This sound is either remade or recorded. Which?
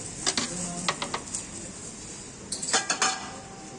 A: recorded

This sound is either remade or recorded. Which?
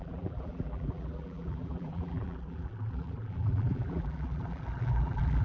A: remade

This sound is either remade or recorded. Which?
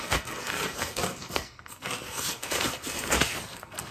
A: remade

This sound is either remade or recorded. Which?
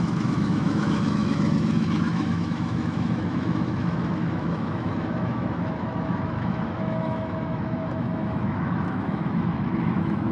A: remade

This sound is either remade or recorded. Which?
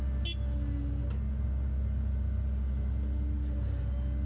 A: recorded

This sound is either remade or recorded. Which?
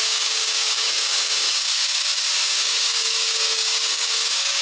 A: remade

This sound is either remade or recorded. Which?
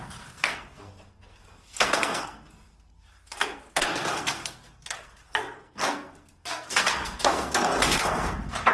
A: remade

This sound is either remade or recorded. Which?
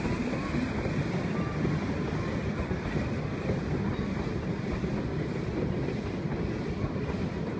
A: recorded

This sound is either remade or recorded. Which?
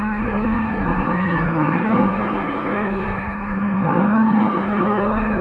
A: remade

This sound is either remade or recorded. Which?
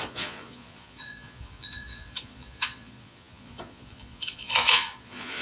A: remade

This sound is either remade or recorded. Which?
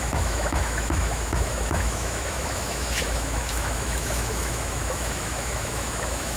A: remade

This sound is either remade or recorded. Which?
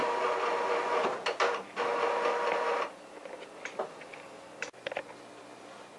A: recorded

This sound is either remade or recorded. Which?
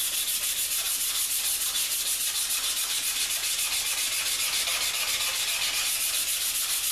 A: recorded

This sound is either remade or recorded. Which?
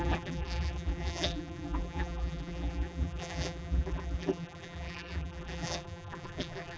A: remade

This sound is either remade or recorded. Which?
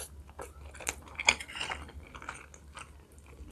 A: recorded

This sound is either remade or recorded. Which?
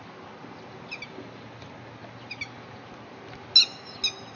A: recorded